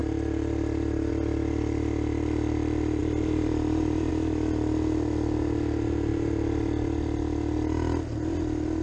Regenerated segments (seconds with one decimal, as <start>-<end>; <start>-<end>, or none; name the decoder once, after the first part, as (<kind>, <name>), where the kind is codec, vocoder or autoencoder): 3.0-4.1 (vocoder, BigVGAN v2)